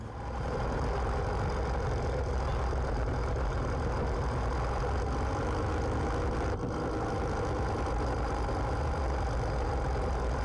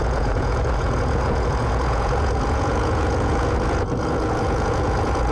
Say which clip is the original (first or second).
first